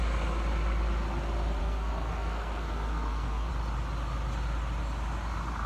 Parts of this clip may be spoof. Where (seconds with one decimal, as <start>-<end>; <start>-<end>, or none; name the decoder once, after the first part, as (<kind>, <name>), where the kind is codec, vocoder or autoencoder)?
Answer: 1.6-3.5 (codec, SNAC)